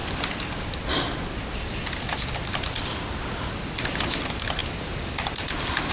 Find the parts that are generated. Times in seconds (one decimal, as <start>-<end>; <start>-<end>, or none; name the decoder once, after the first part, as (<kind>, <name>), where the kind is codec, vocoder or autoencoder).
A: 0.0-3.5 (vocoder, BigVGAN v2); 4.6-5.9